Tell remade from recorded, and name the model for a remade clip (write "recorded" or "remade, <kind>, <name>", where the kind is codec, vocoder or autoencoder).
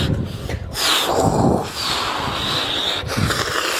recorded